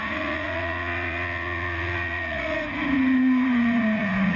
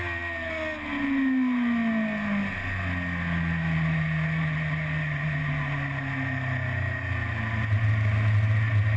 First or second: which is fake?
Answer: first